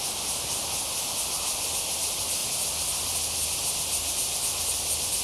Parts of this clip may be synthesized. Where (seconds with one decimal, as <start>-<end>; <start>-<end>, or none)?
none